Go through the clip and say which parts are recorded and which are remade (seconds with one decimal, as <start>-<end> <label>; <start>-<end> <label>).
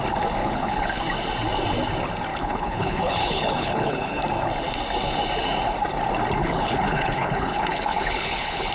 0.0-0.4 recorded; 0.4-1.0 remade; 1.0-2.3 recorded; 2.3-4.2 remade; 4.2-6.4 recorded; 6.4-8.7 remade